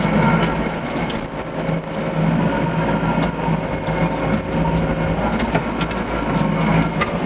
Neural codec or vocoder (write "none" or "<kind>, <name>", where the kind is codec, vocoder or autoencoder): none